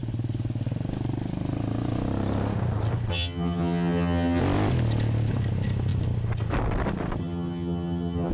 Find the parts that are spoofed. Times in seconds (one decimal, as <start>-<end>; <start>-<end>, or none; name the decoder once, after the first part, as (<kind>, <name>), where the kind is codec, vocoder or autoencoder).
3.1-4.4 (vocoder, HiFi-GAN); 7.2-8.3